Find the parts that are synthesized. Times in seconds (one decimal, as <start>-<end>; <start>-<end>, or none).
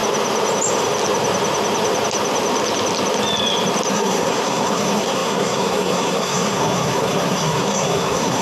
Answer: 3.9-8.4